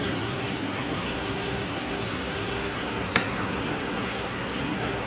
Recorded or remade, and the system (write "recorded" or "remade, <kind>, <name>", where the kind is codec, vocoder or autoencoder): remade, codec, SNAC